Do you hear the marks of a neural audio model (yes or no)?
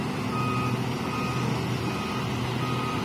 no